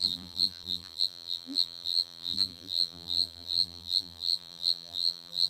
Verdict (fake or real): fake